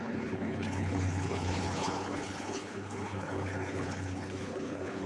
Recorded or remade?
remade